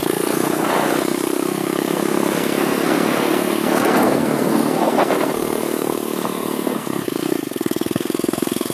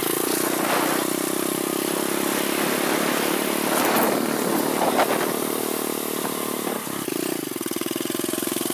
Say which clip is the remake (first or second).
first